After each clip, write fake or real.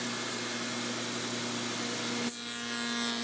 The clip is real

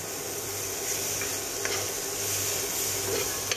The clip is real